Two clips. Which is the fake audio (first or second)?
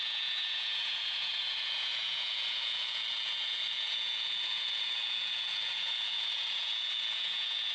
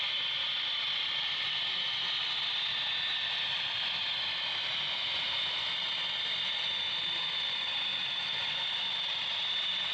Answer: first